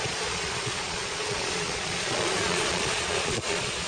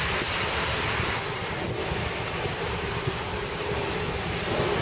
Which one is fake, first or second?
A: first